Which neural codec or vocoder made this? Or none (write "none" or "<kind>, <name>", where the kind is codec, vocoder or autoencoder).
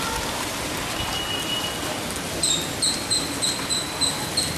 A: none